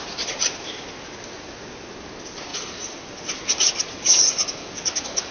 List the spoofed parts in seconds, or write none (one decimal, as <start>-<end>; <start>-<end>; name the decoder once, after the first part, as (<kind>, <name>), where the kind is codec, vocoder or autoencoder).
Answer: none